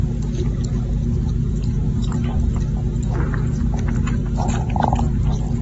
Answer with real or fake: real